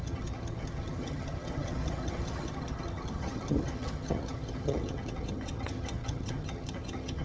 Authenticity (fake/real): fake